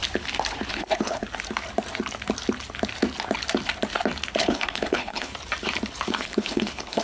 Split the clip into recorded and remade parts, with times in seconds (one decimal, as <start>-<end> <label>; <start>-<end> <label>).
0.0-0.7 recorded; 0.7-1.2 remade; 1.2-4.4 recorded; 4.4-5.3 remade; 5.3-6.1 recorded; 6.1-7.0 remade